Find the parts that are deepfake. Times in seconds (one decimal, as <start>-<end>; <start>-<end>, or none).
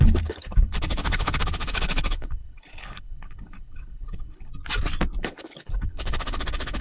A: 0.0-4.5; 5.2-6.8